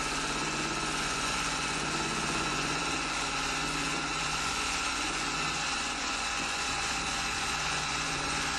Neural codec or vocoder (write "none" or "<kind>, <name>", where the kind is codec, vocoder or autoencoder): vocoder, Vocos